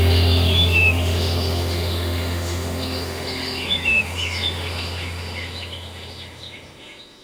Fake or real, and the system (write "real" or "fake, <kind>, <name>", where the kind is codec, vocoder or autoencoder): fake, autoencoder, DAC-VAE